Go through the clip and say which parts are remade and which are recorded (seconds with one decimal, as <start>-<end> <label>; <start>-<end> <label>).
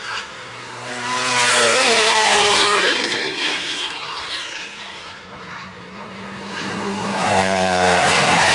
0.0-0.9 remade; 0.9-1.5 recorded; 1.5-8.5 remade